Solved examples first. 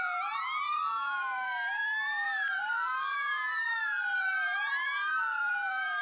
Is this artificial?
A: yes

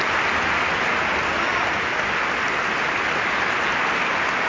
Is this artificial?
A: no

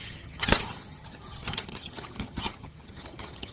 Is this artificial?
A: yes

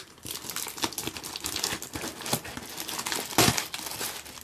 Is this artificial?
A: no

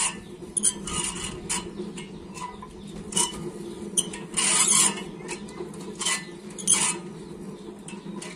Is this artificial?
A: no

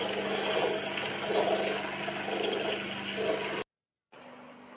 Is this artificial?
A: no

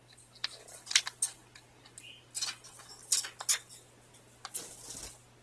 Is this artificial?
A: no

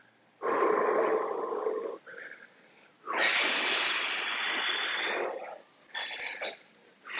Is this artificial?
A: no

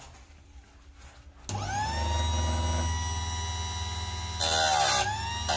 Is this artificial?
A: no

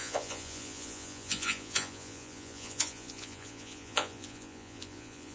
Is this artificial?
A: yes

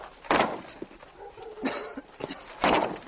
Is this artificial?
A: no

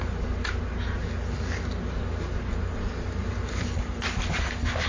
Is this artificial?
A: no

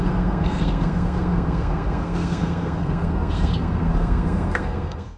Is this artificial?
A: yes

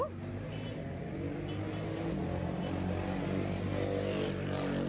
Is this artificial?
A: no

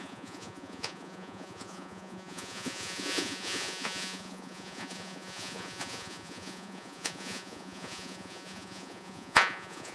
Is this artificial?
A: yes